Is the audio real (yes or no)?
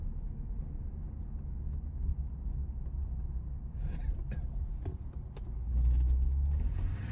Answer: yes